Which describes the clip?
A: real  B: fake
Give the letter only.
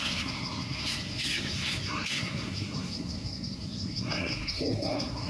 B